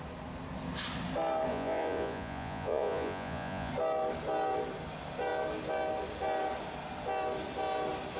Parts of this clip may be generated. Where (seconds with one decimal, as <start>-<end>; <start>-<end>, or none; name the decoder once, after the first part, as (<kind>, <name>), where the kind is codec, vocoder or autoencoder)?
1.5-3.7 (vocoder, Vocos)